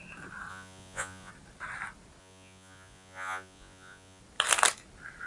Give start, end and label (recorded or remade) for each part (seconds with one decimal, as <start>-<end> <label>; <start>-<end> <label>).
0.0-0.5 recorded; 0.5-1.3 remade; 1.3-2.2 recorded; 2.2-4.2 remade; 4.2-5.3 recorded